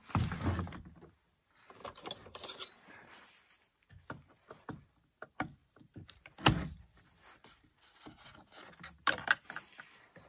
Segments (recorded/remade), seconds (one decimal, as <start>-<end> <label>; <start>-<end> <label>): 0.0-5.6 recorded; 5.6-6.2 remade; 6.2-10.3 recorded